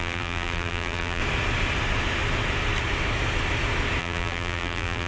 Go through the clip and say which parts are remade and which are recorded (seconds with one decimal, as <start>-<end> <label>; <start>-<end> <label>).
0.0-1.2 remade; 1.2-4.0 recorded; 4.0-5.1 remade

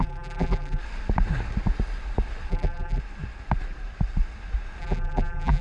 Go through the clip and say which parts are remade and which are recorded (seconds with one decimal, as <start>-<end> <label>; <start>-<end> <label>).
0.0-0.8 remade; 0.8-2.5 recorded; 2.5-3.0 remade; 3.0-4.8 recorded; 4.8-5.6 remade

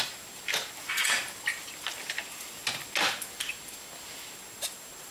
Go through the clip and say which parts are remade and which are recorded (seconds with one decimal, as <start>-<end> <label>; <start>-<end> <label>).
0.0-5.1 recorded

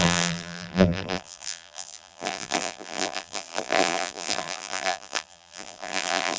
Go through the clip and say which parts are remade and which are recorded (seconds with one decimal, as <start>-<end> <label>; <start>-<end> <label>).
0.0-6.4 remade

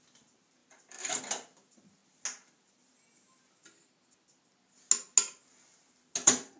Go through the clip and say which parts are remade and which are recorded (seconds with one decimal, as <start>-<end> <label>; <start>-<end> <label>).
0.0-0.6 recorded; 0.6-1.2 remade; 1.2-6.6 recorded

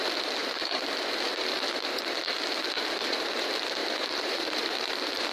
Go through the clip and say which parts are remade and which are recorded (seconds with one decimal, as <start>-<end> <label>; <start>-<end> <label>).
0.0-3.8 recorded; 3.8-5.3 remade